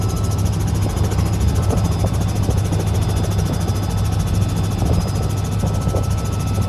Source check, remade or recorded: recorded